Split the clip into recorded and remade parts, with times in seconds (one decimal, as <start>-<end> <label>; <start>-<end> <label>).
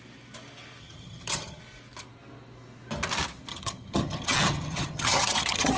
0.0-0.8 recorded; 0.8-1.6 remade; 1.6-3.5 recorded; 3.5-5.8 remade